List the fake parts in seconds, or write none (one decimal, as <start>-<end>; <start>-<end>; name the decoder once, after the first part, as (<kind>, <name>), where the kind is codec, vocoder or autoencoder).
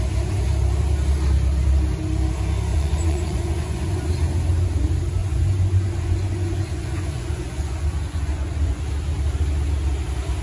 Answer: 2.7-4.0 (vocoder, Vocos); 5.2-8.8